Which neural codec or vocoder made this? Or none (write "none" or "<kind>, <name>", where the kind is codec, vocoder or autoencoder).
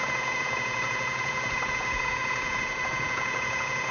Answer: vocoder, Vocos